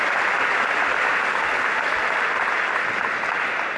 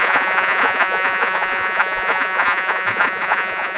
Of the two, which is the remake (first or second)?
second